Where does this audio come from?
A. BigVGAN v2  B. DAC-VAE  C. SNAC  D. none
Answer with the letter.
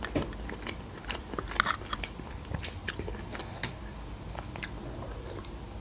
D